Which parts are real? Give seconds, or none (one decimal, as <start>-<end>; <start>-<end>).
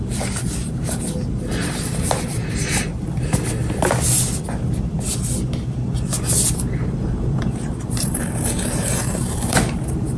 2.9-6.7